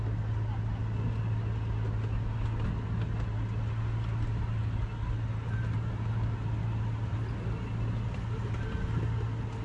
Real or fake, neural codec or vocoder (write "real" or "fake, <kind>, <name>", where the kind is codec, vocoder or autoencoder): real